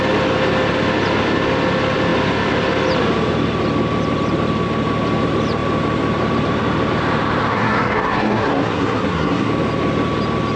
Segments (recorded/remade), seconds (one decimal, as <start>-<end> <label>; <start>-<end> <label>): 0.0-7.5 recorded; 7.5-9.5 remade; 9.5-10.6 recorded